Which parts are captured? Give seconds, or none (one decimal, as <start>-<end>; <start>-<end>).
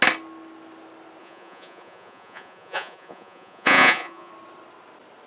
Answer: 0.0-1.2; 4.3-5.3